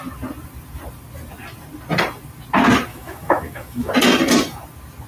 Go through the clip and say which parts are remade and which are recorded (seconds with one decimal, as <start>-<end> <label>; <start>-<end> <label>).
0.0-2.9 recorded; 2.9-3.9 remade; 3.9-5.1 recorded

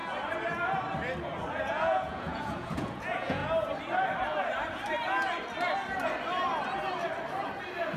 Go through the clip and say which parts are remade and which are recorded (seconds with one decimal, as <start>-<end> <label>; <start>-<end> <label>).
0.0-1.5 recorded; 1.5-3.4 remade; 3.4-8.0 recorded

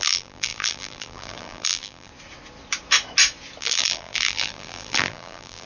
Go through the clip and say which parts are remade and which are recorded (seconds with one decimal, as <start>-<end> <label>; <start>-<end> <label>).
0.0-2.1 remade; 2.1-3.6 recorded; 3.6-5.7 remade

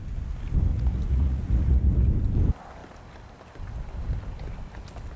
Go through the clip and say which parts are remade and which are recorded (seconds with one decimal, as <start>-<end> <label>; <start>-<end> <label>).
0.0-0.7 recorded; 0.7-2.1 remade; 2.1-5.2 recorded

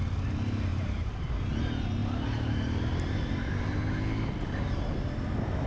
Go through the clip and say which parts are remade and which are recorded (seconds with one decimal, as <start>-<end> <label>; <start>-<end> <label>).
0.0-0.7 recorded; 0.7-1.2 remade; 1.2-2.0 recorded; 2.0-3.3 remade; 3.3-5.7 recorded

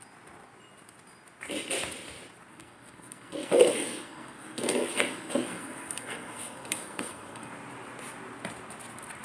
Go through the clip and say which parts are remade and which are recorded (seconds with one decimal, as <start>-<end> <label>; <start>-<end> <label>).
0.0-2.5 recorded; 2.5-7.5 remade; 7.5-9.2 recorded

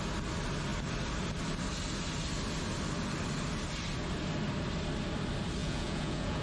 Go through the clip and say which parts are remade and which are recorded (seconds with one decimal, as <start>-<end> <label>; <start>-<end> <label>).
0.0-5.6 recorded; 5.6-6.4 remade

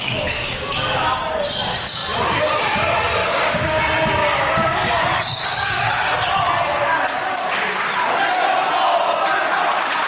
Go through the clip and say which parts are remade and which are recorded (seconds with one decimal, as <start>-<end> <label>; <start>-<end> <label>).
0.0-1.2 remade; 1.2-3.2 recorded; 3.2-3.8 remade; 3.8-4.2 recorded; 4.2-5.9 remade; 5.9-10.1 recorded